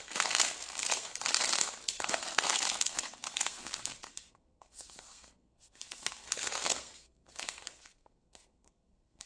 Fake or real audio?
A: fake